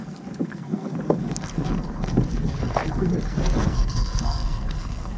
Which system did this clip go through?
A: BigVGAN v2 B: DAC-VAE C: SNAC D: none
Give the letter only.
C